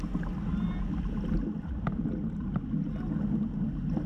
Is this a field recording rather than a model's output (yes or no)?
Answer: yes